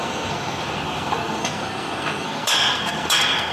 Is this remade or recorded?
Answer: remade